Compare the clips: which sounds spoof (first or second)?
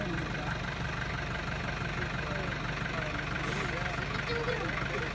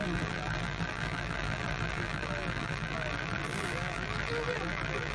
second